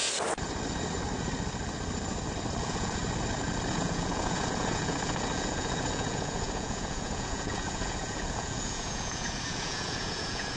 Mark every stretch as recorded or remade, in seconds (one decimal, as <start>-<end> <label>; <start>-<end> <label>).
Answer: 0.0-2.6 recorded; 2.6-3.0 remade; 3.0-3.7 recorded; 3.7-10.6 remade